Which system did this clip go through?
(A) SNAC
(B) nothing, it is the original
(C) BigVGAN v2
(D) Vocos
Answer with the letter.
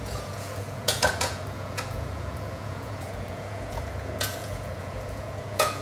D